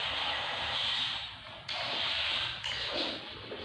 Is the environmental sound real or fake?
fake